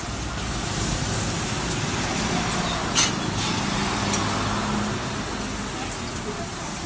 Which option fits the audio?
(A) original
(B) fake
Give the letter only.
A